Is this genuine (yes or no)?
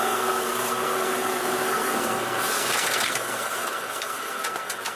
no